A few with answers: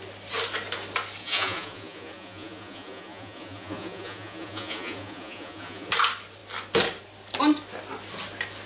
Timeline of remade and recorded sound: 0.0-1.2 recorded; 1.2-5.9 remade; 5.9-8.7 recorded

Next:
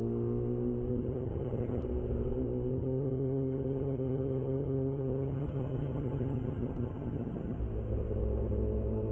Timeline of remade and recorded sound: 0.0-0.9 recorded; 0.9-1.8 remade; 1.8-2.7 recorded; 2.7-7.6 remade; 7.6-9.1 recorded

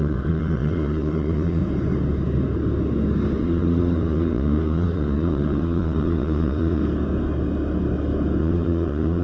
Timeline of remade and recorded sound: 0.0-1.6 remade; 1.6-3.4 recorded; 3.4-6.8 remade; 6.8-8.4 recorded; 8.4-9.2 remade